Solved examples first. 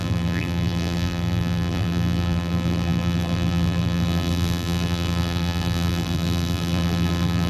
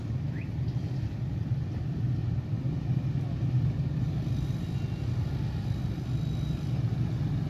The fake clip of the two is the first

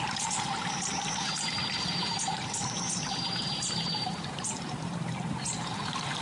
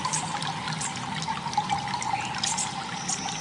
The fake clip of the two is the first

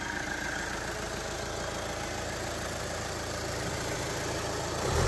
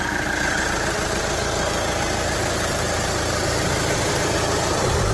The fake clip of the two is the second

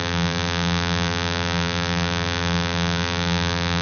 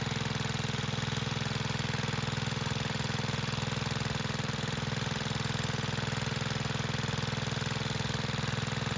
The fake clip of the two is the first